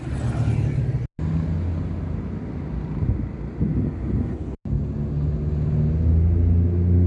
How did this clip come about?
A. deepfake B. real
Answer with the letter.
B